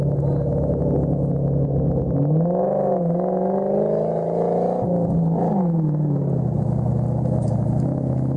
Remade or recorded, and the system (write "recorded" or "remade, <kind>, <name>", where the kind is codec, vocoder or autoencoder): recorded